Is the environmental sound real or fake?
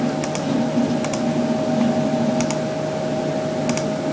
real